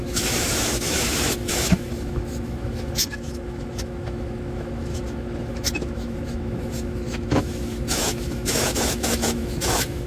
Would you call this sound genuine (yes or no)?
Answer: no